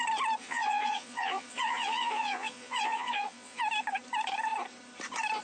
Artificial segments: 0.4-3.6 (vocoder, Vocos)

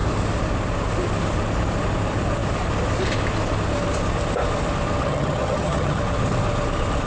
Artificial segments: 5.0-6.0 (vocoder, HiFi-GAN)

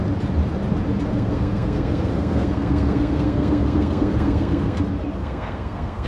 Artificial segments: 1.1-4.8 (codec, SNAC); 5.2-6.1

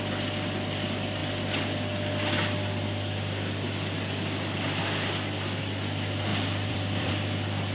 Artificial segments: 6.3-7.1 (vocoder, BigVGAN v2)

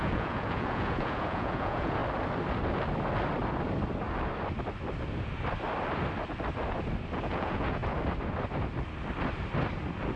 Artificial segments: 0.0-2.0 (vocoder, Vocos); 7.3-7.8

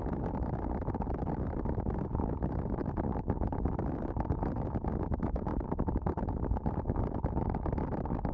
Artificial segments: 2.8-4.3 (vocoder, BigVGAN v2); 5.5-6.4

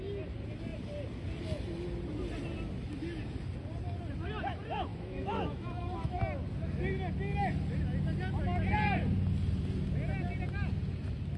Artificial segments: 4.9-6.2 (autoencoder, DAC-VAE)

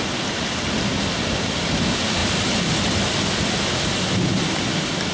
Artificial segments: none